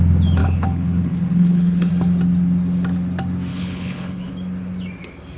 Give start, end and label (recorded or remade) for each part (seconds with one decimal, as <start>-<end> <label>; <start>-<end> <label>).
0.0-0.4 recorded; 0.4-1.9 remade; 1.9-3.5 recorded; 3.5-4.3 remade; 4.3-5.4 recorded